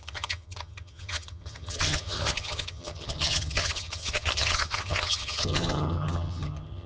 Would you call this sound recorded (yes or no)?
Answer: no